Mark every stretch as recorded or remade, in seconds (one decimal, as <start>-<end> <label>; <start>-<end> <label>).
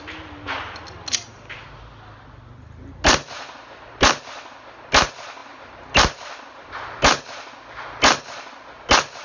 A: 0.0-9.2 recorded